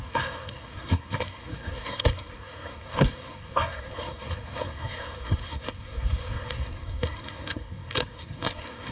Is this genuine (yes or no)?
no